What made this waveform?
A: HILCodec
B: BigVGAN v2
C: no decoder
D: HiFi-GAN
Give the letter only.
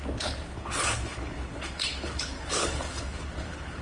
A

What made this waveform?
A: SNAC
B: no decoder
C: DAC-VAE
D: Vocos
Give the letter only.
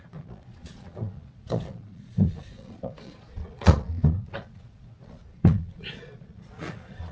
D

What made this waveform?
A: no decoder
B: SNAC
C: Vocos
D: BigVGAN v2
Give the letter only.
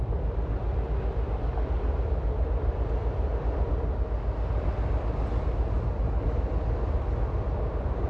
A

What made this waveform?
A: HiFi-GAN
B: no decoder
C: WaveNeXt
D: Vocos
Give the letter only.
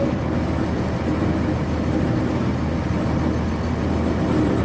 B